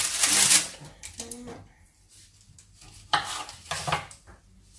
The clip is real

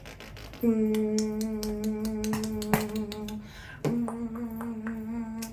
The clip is real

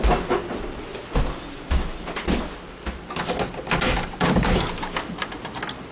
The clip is real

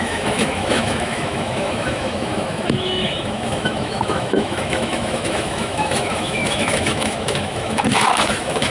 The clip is fake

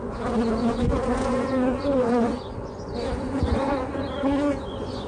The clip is fake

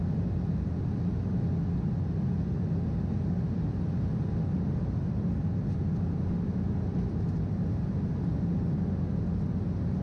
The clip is real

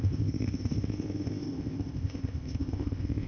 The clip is fake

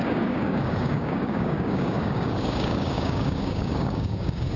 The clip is fake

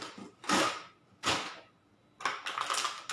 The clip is real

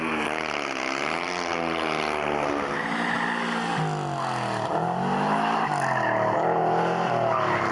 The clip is real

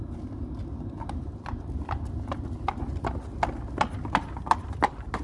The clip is real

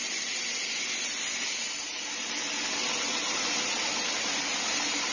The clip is real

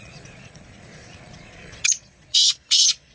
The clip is fake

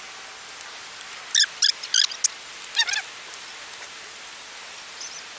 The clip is real